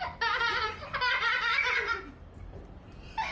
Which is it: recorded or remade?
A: recorded